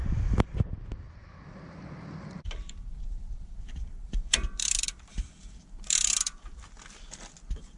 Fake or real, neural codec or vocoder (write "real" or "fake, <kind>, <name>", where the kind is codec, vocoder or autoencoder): fake, vocoder, BigVGAN v2